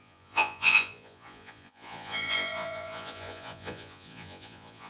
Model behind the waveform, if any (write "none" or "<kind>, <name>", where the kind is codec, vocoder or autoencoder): vocoder, Vocos